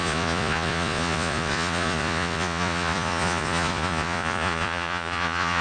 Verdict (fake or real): fake